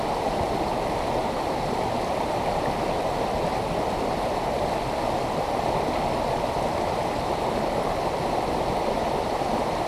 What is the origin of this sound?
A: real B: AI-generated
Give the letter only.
A